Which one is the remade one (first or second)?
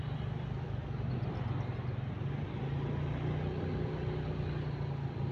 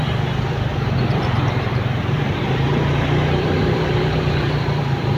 second